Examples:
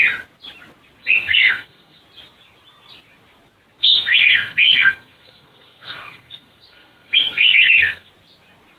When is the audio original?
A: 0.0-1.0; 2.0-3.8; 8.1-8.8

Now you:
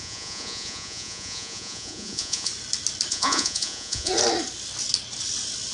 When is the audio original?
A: 2.5-3.1; 4.1-5.7

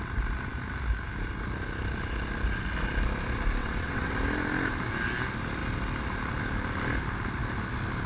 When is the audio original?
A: 0.0-3.6; 4.1-8.1

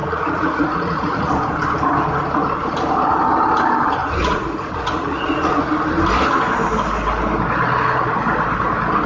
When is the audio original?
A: 1.3-4.0; 5.7-9.1